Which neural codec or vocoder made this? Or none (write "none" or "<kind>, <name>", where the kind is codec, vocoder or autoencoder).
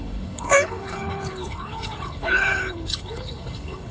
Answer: codec, HILCodec